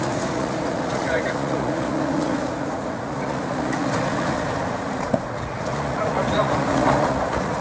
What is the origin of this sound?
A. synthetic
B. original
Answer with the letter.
A